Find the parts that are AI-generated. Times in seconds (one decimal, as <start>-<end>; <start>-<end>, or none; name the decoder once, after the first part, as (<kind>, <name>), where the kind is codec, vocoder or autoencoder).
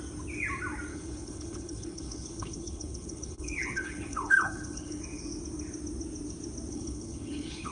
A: 0.9-5.0 (codec, HILCodec); 6.7-7.7